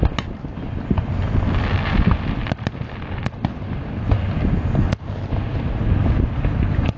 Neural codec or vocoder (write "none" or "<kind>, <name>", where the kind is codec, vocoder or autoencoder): none